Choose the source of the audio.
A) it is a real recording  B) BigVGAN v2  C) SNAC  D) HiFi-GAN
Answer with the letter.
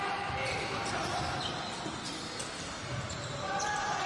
A